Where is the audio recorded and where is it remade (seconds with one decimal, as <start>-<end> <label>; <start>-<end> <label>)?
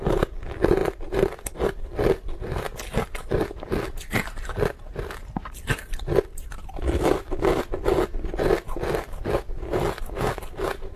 0.0-11.0 recorded